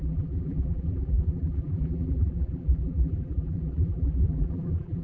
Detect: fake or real fake